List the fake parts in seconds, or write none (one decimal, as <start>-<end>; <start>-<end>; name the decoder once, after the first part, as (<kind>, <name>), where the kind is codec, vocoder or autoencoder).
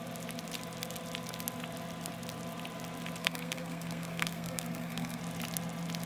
3.2-5.2 (codec, SNAC)